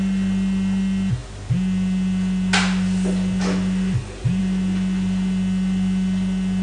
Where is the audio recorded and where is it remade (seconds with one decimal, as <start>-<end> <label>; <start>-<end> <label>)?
0.0-6.6 recorded